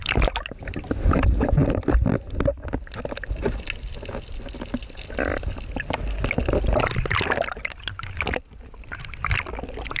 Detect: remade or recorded recorded